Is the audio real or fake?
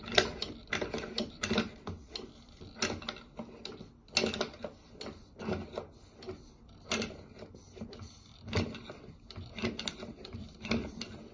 real